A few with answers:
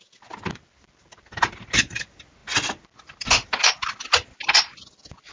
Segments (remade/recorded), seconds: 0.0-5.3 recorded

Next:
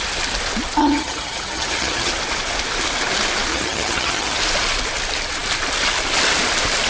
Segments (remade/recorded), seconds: 0.0-0.8 recorded; 0.8-2.1 remade; 2.1-3.5 recorded; 3.5-4.4 remade; 4.4-6.9 recorded

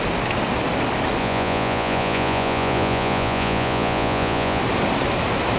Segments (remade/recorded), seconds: 0.0-1.2 recorded; 1.2-4.6 remade; 4.6-5.6 recorded

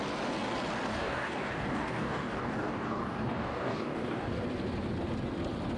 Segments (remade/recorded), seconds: 0.0-0.9 recorded; 0.9-4.4 remade; 4.4-5.8 recorded

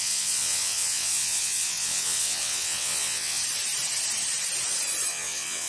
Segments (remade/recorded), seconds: 0.0-3.4 remade; 3.4-5.1 recorded; 5.1-5.7 remade

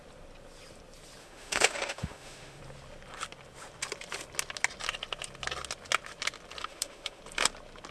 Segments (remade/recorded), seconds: 0.0-1.2 recorded; 1.2-2.6 remade; 2.6-6.6 recorded; 6.6-7.2 remade; 7.2-7.9 recorded

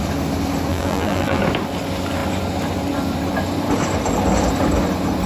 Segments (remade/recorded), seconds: 0.0-0.7 recorded; 0.7-1.4 remade; 1.4-5.3 recorded

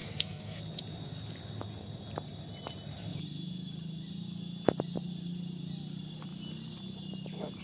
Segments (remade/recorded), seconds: 0.0-0.6 remade; 0.6-7.6 recorded